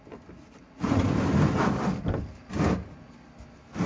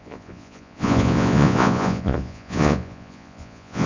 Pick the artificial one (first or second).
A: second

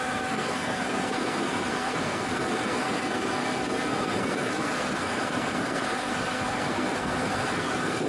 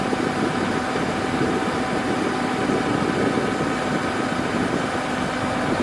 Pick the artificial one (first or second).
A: first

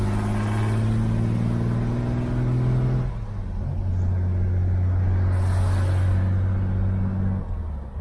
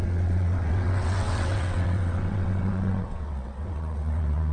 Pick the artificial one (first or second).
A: second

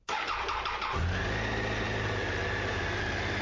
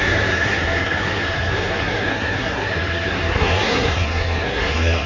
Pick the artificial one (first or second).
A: second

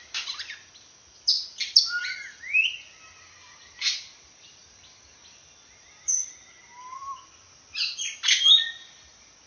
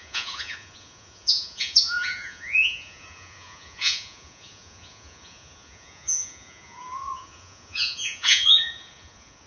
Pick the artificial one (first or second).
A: second